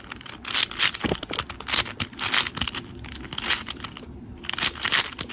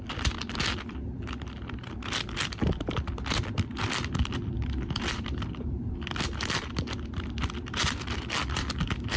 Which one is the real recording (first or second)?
first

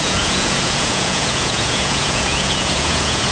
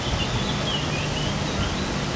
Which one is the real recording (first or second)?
second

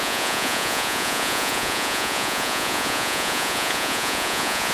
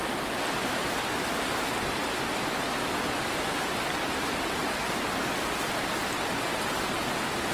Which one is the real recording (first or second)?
second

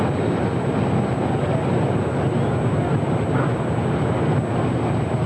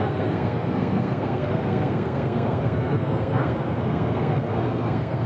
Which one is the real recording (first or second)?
first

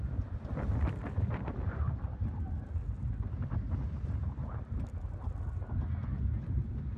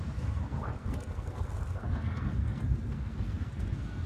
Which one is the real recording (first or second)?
first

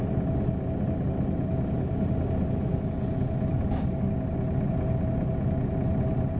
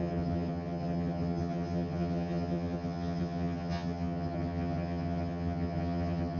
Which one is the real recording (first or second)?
first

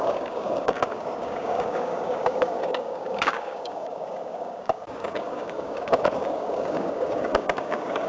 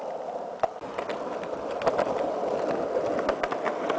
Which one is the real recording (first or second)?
second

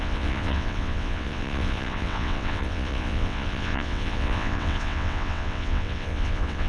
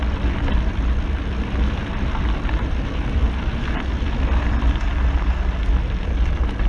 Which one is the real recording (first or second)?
second